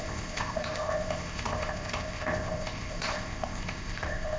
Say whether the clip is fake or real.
fake